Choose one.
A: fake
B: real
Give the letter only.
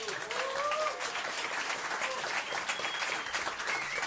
B